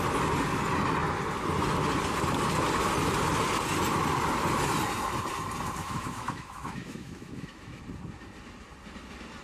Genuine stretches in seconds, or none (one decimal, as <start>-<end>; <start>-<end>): 0.0-5.8; 7.8-9.4